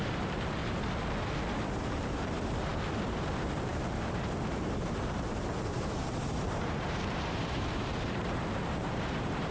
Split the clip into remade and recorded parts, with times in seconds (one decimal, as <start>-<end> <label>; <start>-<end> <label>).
0.0-0.6 remade; 0.6-1.8 recorded; 1.8-2.7 remade; 2.7-3.3 recorded; 3.3-9.5 remade